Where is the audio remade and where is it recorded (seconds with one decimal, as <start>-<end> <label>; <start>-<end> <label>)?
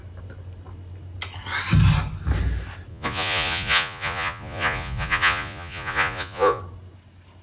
0.0-2.9 recorded; 2.9-6.6 remade; 6.6-7.4 recorded